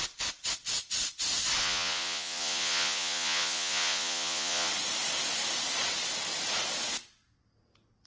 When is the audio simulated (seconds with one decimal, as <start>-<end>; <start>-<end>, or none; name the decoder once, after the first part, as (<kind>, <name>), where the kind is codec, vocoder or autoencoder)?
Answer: 1.6-4.7 (vocoder, Vocos)